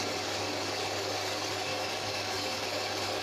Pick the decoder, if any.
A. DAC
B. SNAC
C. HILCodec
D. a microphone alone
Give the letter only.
A